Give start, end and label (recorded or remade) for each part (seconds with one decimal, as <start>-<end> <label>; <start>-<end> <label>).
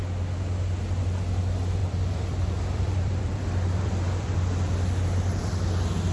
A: 0.0-1.8 recorded; 1.8-5.4 remade; 5.4-6.1 recorded